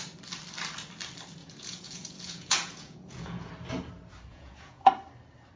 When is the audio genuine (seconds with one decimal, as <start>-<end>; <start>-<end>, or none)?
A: 0.0-1.4; 3.5-4.3; 4.9-5.6